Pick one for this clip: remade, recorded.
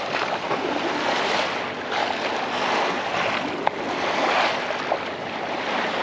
recorded